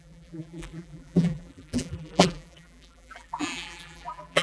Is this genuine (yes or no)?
no